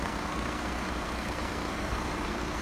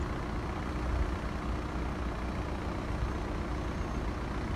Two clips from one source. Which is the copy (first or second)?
first